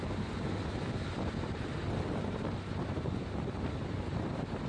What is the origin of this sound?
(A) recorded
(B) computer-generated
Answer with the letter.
A